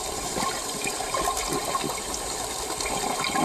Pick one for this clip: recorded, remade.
recorded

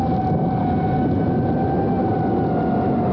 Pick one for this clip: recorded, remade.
recorded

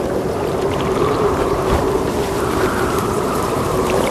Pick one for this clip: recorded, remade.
remade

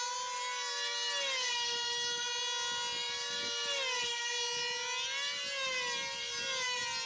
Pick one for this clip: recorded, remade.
recorded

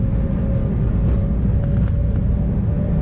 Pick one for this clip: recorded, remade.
recorded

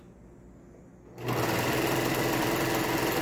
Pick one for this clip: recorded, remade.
recorded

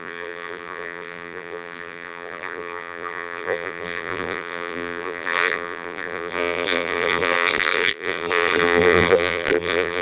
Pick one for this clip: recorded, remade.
remade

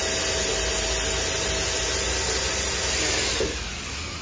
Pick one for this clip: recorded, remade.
recorded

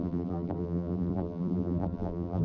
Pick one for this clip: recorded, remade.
remade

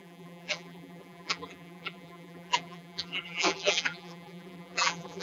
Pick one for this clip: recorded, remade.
remade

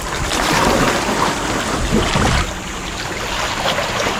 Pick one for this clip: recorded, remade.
remade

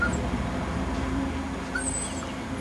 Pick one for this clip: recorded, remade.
recorded